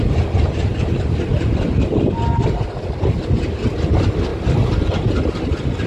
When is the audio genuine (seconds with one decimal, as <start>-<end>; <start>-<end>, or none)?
0.0-5.9